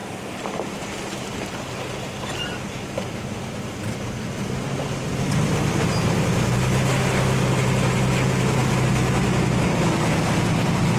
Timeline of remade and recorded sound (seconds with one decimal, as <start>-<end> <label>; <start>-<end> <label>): 0.0-11.0 recorded